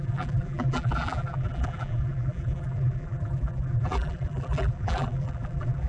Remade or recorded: remade